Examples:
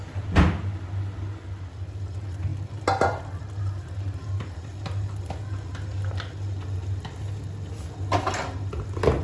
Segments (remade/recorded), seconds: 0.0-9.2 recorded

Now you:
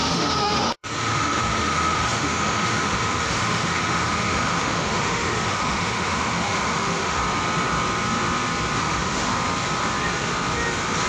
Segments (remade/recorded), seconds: 0.0-7.2 remade; 7.2-8.8 recorded; 8.8-9.3 remade; 9.3-11.1 recorded

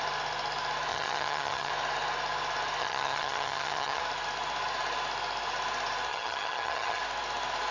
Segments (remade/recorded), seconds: 0.0-0.9 recorded; 0.9-1.7 remade; 1.7-2.8 recorded; 2.8-4.0 remade; 4.0-6.1 recorded; 6.1-7.0 remade; 7.0-7.7 recorded